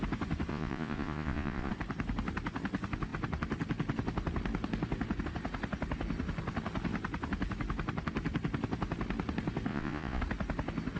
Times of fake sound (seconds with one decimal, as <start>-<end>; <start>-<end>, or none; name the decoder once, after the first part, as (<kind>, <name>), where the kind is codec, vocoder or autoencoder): 0.5-1.7 (vocoder, Vocos); 9.7-10.2